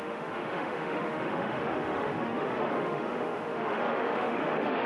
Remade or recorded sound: remade